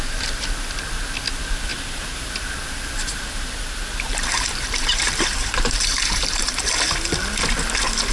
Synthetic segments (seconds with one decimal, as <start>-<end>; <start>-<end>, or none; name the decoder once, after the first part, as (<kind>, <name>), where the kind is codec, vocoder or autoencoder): 1.7-2.9 (vocoder, BigVGAN v2); 4.1-6.6